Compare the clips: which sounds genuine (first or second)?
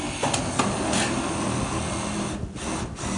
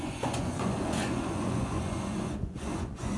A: first